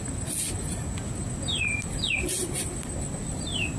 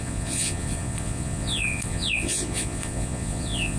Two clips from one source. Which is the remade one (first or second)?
second